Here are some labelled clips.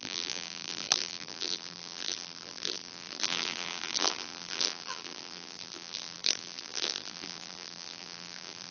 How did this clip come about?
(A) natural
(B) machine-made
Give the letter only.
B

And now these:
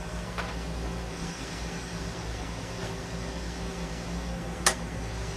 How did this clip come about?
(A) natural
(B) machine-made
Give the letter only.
B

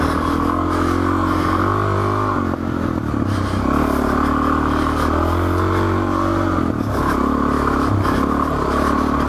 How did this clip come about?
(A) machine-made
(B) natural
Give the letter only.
B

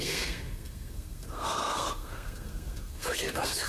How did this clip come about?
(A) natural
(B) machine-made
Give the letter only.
B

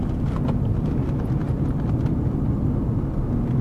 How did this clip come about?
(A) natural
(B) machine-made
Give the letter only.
A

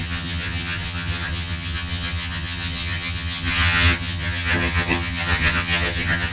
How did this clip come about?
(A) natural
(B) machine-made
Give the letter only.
B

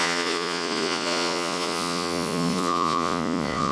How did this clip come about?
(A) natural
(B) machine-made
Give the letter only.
B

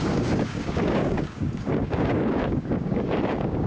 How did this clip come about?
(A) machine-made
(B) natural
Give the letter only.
A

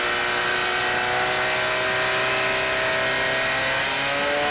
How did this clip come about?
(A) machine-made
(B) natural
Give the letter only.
B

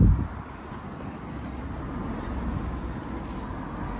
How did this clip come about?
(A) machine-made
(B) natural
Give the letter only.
B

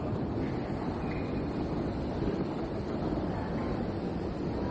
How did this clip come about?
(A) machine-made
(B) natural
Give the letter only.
B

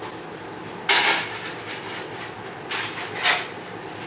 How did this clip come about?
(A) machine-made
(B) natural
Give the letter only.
B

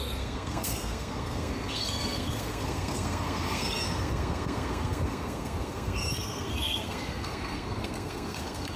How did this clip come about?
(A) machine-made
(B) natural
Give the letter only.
A